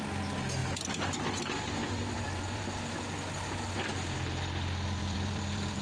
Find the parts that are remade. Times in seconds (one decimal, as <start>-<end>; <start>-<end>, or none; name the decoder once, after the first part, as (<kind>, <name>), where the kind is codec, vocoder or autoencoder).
0.6-1.4 (vocoder, BigVGAN v2); 1.8-2.6; 5.0-5.8